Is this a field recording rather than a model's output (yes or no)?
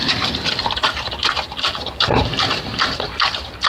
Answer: no